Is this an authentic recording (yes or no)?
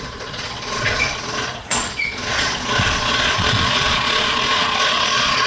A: no